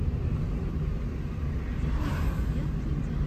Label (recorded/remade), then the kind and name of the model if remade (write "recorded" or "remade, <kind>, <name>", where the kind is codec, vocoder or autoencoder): recorded